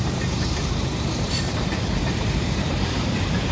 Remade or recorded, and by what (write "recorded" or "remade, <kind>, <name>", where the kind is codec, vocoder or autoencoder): remade, vocoder, BigVGAN v2